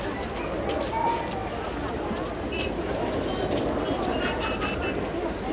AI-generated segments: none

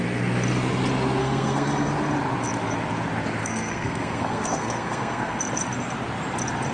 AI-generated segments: 1.2-1.9 (codec, SNAC); 3.4-5.4